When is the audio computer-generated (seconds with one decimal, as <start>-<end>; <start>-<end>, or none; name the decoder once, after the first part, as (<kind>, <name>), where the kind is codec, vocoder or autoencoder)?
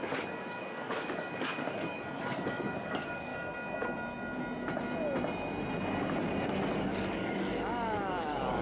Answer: 0.0-3.3 (codec, DAC); 6.8-8.6